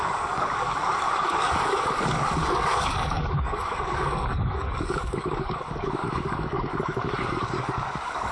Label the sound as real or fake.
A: fake